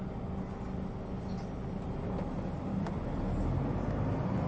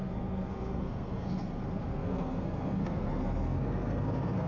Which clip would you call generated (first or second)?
second